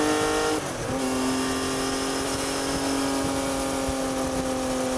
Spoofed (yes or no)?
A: no